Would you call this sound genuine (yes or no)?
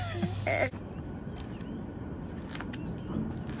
yes